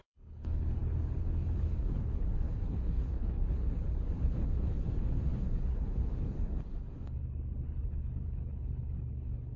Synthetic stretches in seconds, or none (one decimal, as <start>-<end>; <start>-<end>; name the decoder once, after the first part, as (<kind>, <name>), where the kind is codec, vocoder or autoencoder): 0.0-9.6 (codec, HILCodec)